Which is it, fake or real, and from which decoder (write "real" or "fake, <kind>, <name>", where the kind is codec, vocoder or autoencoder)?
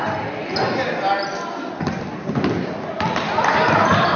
real